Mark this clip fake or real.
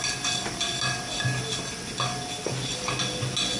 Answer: real